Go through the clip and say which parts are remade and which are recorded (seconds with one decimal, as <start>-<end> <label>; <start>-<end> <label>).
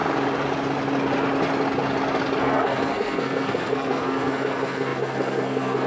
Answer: 0.0-2.4 recorded; 2.4-5.9 remade